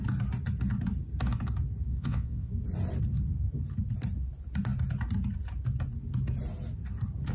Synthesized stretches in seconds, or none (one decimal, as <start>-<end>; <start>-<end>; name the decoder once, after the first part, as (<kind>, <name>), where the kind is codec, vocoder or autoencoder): 1.9-2.5 (vocoder, WaveNeXt)